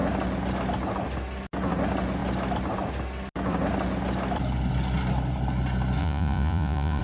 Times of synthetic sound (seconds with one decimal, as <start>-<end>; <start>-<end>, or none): 6.0-7.0